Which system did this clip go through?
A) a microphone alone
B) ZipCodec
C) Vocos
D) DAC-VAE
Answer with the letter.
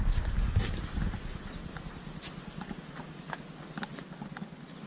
A